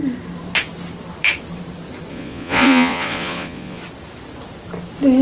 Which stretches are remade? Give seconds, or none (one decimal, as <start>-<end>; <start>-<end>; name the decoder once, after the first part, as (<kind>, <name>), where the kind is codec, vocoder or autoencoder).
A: 2.1-3.8 (vocoder, Vocos)